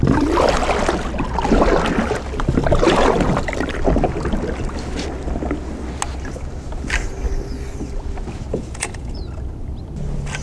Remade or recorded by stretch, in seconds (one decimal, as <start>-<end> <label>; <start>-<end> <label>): 0.0-8.5 recorded; 8.5-9.2 remade; 9.2-10.4 recorded